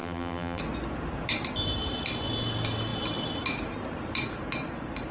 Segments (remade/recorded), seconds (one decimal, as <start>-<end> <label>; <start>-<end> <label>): 0.0-0.6 remade; 0.6-5.1 recorded